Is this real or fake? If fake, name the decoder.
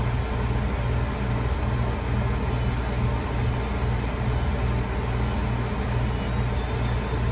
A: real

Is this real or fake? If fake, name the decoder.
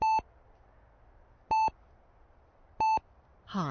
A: real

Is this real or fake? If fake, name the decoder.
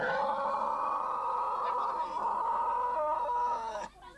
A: real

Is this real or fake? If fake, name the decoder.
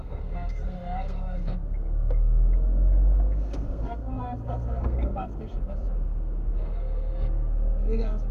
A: fake, codec, SNAC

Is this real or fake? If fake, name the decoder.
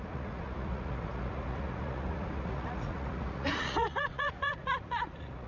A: fake, vocoder, Vocos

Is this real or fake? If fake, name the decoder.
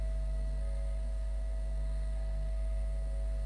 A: fake, codec, SNAC